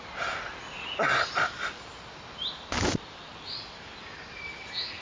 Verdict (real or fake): real